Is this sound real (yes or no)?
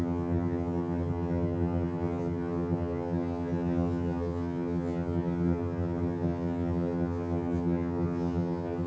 no